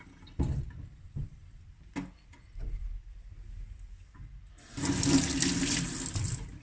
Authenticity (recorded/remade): recorded